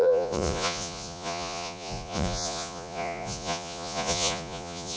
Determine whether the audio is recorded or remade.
remade